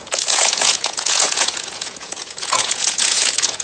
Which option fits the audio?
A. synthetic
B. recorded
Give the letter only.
A